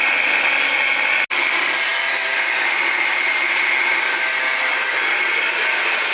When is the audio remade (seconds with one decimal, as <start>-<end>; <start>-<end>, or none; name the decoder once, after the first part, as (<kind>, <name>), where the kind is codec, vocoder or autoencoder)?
none